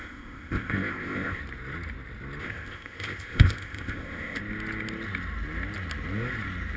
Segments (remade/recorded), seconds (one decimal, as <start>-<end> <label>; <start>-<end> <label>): 0.0-1.4 remade; 1.4-2.4 recorded; 2.4-4.4 remade; 4.4-6.8 recorded